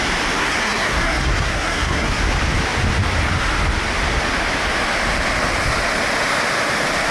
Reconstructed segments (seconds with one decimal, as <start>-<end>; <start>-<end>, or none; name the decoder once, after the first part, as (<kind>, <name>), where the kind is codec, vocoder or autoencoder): 0.4-2.2 (codec, SNAC)